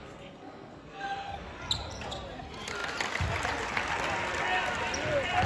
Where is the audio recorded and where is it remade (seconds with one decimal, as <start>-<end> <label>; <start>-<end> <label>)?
0.0-1.6 remade; 1.6-5.5 recorded